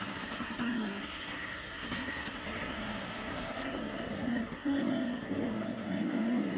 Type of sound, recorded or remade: remade